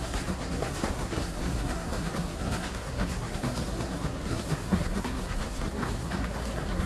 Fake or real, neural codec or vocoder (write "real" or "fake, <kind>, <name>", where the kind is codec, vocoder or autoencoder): fake, codec, SNAC